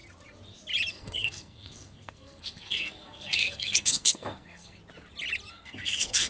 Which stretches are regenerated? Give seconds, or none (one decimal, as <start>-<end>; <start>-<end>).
0.9-4.8; 5.5-6.3